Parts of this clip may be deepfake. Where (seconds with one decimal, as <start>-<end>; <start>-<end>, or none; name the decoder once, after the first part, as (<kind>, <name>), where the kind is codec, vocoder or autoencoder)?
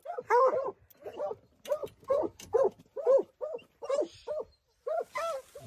none